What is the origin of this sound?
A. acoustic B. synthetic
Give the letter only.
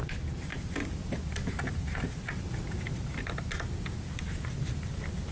A